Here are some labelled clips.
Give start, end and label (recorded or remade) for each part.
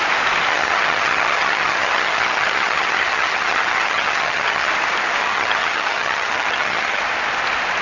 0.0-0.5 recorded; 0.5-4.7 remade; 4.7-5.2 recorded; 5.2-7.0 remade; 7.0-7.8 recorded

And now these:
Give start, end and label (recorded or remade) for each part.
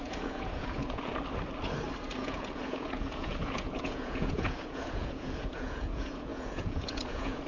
0.0-1.1 remade; 1.1-2.2 recorded; 2.2-7.5 remade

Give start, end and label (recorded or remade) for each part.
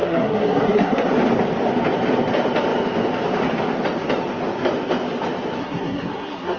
0.0-1.1 remade; 1.1-5.6 recorded; 5.6-6.6 remade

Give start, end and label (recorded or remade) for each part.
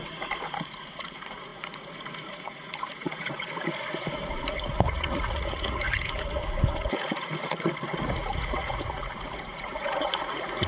0.0-10.7 remade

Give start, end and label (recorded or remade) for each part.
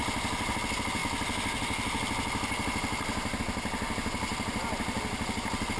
0.0-5.8 recorded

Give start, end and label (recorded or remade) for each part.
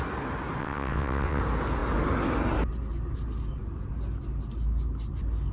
0.0-0.6 recorded; 0.6-1.4 remade; 1.4-5.5 recorded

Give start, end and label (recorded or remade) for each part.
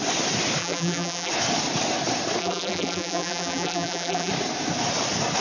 0.0-0.6 recorded; 0.6-1.3 remade; 1.3-2.4 recorded; 2.4-4.3 remade; 4.3-5.4 recorded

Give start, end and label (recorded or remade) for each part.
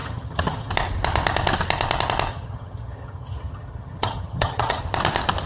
0.0-0.7 remade; 0.7-2.3 recorded; 2.3-4.8 remade; 4.8-5.5 recorded